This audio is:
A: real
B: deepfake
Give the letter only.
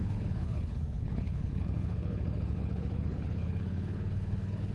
B